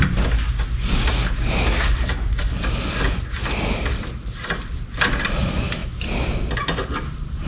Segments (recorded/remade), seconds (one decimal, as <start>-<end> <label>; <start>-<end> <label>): 0.0-7.5 recorded